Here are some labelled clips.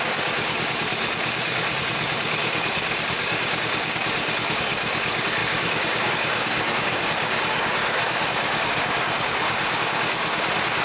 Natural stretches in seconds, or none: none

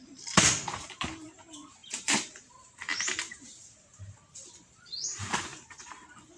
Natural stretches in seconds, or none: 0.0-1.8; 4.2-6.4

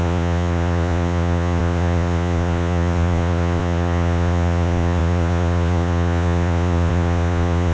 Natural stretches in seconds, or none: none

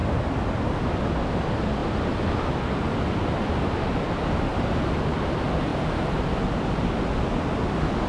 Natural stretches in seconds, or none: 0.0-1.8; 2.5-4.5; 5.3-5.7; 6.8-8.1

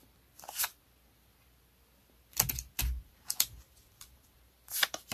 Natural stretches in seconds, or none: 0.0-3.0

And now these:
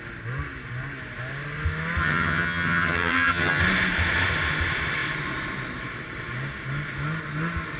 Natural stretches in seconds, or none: 0.0-2.0; 3.6-7.8